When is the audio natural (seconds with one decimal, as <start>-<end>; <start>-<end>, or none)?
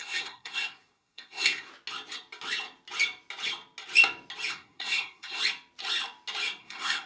1.7-4.5; 5.4-6.6